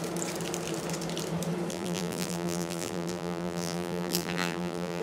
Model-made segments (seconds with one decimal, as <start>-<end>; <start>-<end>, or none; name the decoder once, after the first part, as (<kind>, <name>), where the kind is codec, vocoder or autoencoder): 1.7-5.0 (vocoder, BigVGAN v2)